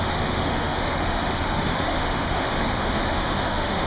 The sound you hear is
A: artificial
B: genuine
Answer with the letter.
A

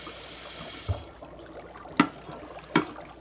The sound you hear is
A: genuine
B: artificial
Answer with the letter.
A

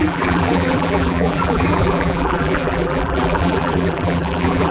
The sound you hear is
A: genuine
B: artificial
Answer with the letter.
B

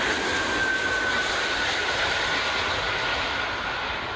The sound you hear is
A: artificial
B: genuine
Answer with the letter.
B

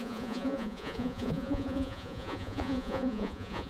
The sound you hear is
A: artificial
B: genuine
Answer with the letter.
A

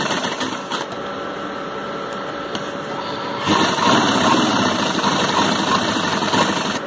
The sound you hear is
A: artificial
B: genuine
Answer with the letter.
B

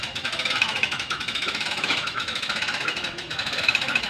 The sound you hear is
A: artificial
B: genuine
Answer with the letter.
A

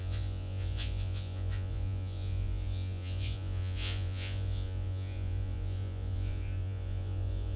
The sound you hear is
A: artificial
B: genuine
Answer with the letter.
A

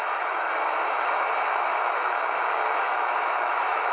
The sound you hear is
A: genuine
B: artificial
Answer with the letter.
B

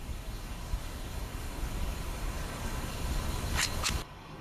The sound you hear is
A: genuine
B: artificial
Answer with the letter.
B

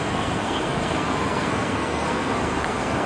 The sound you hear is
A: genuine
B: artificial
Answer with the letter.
B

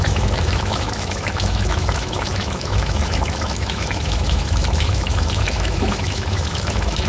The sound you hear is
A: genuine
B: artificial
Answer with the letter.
B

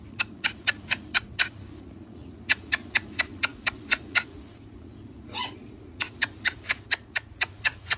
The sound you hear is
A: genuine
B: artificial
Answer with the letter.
B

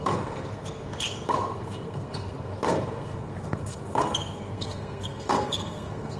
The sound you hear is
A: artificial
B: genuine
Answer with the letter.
A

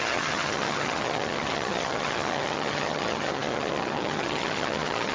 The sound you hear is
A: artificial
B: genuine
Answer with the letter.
A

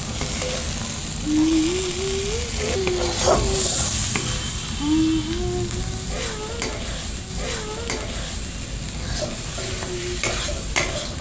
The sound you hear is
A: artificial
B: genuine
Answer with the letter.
B